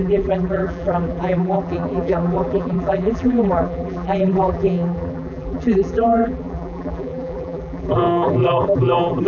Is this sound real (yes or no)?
no